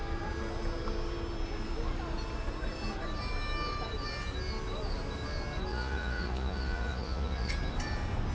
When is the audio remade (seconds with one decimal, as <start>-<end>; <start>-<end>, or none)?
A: 5.7-7.5